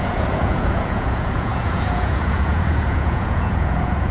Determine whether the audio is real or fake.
fake